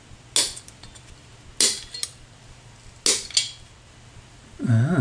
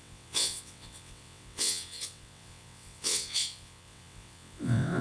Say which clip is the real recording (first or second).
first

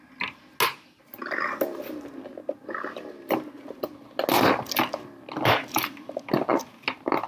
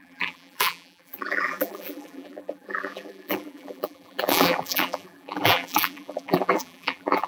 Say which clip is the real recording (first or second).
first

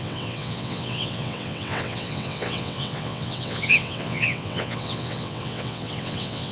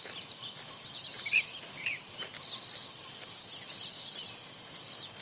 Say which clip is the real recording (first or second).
second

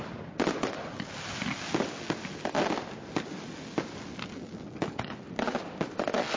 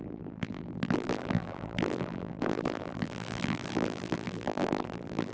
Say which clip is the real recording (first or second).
first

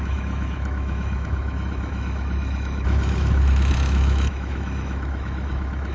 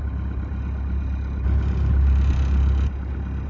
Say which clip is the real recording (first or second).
second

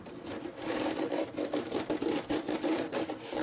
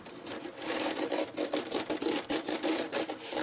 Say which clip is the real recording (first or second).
second